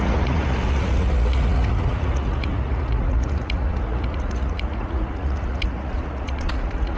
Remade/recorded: remade